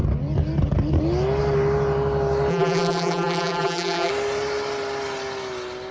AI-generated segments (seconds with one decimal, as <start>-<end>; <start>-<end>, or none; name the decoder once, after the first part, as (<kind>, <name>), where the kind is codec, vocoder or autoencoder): 2.5-4.1 (vocoder, BigVGAN v2)